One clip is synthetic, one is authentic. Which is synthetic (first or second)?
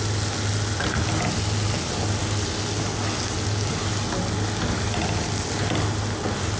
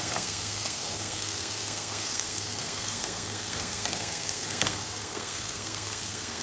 second